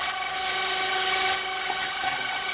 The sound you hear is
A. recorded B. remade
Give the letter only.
B